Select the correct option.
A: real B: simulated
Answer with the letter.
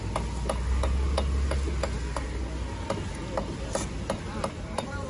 A